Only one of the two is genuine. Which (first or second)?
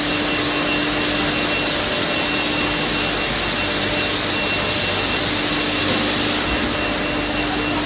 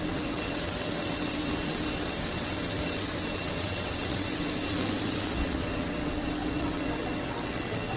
first